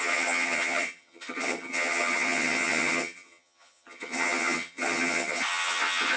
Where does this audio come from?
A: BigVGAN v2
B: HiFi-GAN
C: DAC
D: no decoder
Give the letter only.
B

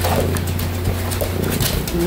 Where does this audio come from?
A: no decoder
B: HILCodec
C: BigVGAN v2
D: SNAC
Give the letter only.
A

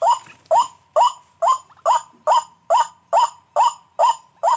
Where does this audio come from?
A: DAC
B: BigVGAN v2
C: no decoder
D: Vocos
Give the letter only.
C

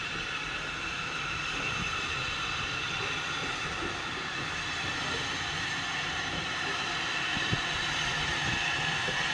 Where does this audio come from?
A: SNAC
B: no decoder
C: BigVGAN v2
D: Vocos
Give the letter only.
C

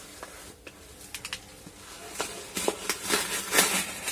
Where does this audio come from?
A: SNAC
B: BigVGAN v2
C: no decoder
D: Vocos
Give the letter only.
C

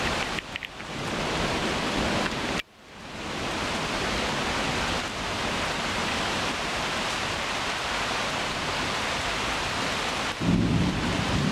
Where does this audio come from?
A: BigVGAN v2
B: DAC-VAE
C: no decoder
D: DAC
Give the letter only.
A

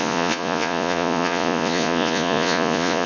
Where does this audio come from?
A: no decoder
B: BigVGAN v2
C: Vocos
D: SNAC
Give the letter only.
C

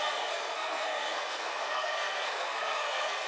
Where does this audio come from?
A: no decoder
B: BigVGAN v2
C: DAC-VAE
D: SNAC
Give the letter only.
D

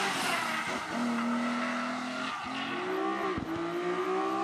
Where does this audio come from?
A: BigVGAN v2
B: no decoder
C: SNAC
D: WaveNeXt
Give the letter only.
B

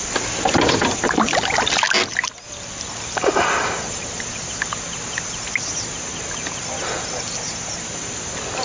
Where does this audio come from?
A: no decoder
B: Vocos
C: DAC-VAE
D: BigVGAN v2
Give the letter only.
A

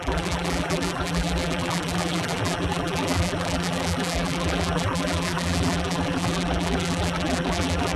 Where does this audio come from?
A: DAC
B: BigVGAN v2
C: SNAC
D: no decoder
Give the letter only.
B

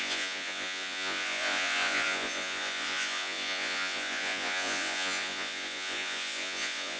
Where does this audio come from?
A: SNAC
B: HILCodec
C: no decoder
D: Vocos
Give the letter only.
D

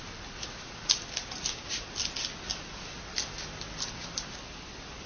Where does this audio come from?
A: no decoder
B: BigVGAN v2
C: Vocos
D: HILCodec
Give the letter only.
A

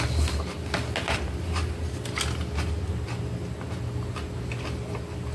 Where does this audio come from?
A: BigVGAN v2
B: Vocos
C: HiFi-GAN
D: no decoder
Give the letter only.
D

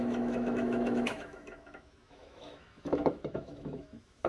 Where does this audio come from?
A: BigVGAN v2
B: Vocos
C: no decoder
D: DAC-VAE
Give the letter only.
D